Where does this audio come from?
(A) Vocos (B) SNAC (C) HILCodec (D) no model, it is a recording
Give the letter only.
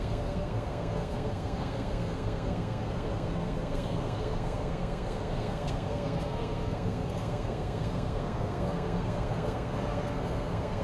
B